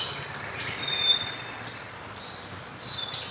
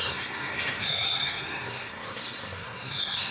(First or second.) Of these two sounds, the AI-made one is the second